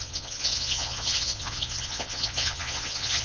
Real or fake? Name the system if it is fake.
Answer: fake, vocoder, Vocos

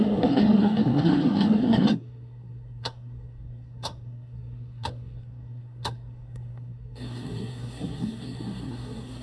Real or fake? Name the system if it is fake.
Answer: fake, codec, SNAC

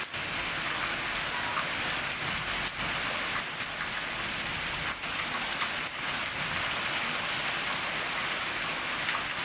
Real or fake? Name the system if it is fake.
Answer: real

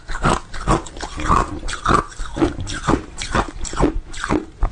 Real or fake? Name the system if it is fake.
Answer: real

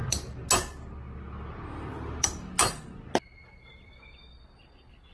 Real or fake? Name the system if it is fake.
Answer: real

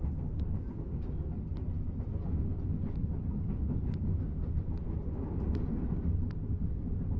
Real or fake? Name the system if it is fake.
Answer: real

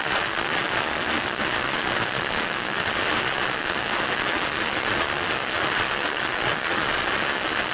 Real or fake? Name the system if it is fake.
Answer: fake, vocoder, Vocos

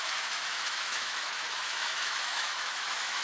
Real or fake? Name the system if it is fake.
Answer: fake, autoencoder, DAC-VAE